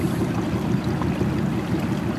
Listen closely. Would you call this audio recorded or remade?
recorded